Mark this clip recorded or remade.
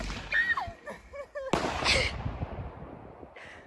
recorded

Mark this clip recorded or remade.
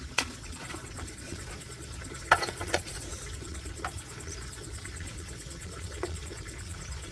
remade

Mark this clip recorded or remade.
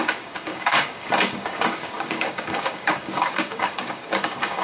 remade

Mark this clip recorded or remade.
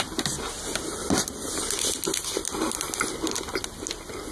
recorded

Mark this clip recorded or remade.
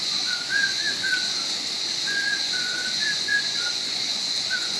remade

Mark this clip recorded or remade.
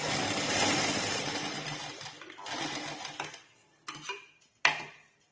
recorded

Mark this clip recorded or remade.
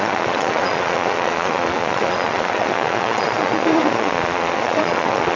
remade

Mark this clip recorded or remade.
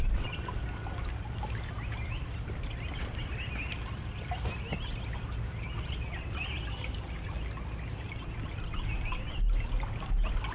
recorded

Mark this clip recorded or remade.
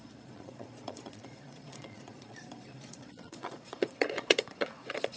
remade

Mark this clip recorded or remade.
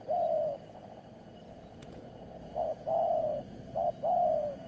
remade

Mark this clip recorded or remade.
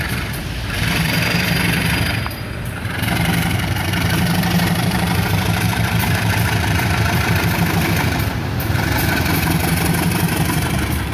remade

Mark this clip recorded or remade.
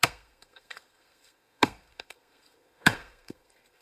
remade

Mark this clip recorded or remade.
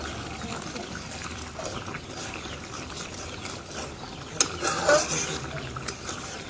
recorded